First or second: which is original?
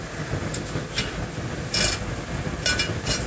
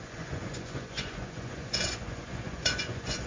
first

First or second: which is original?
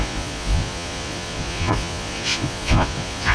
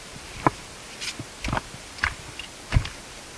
second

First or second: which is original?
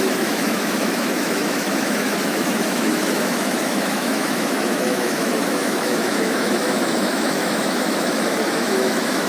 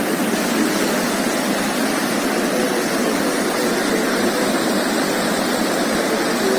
second